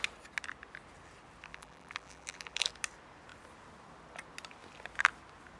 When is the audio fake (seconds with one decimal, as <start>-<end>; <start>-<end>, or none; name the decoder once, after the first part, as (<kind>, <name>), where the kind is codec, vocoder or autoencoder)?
1.5-2.7 (vocoder, BigVGAN v2)